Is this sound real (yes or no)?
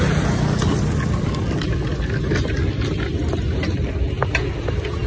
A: yes